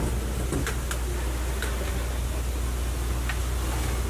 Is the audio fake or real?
real